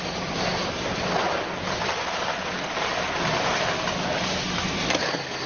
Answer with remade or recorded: recorded